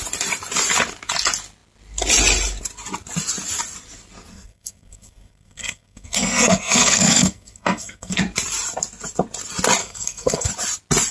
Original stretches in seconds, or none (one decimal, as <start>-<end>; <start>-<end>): 0.0-4.3; 8.2-9.8; 10.5-11.1